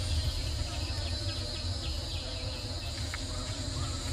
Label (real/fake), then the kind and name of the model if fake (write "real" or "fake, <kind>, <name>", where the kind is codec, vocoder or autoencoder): real